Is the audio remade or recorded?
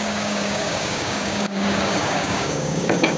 remade